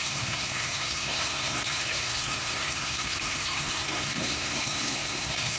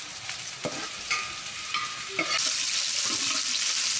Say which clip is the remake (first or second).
first